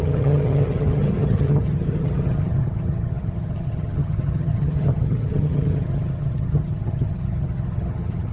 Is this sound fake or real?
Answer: fake